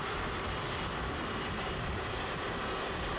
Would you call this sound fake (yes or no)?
no